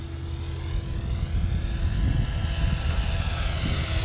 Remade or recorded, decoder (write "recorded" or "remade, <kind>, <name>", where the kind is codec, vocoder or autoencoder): recorded